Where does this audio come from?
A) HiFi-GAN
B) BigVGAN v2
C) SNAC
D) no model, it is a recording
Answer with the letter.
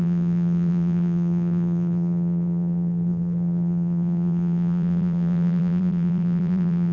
B